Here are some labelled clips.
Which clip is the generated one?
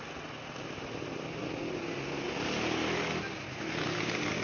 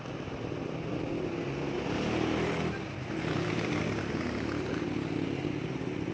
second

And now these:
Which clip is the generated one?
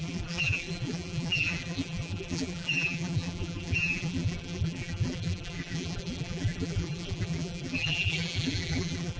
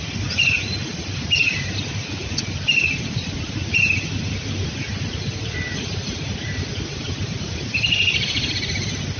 first